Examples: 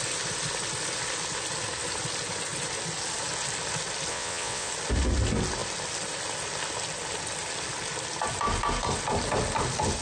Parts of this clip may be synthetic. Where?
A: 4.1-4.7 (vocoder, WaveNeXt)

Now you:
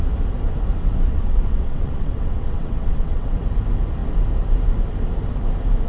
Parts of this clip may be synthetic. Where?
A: 1.1-3.4 (vocoder, WaveNeXt)

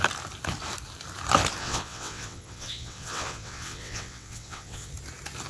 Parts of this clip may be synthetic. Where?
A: 1.6-4.9 (vocoder, WaveNeXt)